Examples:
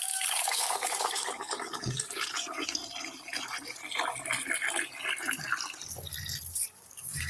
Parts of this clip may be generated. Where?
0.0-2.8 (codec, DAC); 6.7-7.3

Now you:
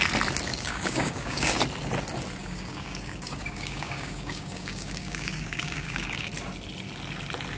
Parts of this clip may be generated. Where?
0.5-1.6 (codec, DAC); 2.4-6.3

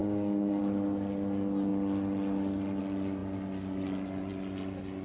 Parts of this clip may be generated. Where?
0.0-0.6 (codec, DAC)